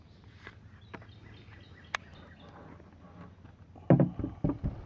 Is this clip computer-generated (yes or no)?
no